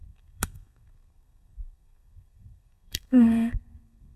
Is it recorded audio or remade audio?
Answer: remade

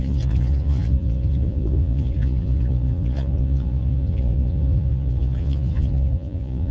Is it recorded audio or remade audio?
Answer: remade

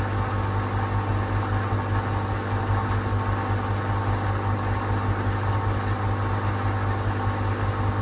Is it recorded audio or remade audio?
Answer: recorded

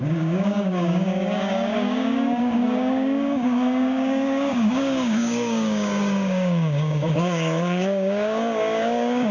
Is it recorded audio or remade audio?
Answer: remade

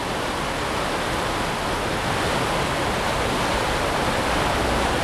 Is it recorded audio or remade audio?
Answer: recorded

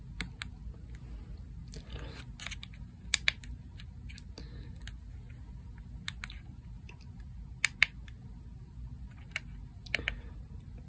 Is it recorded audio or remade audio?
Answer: recorded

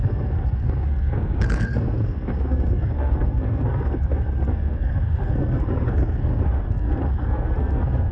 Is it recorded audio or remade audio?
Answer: remade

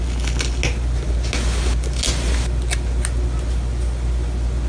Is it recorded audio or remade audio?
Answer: recorded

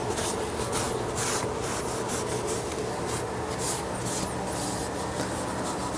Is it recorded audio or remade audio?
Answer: recorded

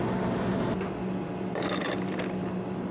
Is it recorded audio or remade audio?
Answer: recorded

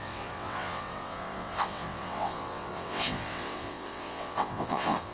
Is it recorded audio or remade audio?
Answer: remade